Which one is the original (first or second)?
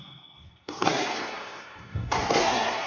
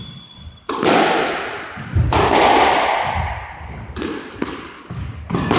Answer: second